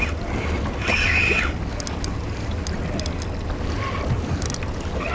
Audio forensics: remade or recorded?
recorded